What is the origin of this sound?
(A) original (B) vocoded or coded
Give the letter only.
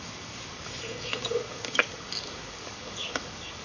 B